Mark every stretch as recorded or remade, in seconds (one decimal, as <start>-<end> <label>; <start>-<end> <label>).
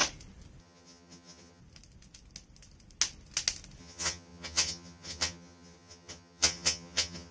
0.0-0.6 recorded; 0.6-1.6 remade; 1.6-3.8 recorded; 3.8-7.3 remade